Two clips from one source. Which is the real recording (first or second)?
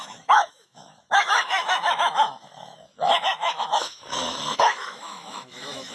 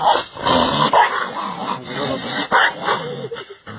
second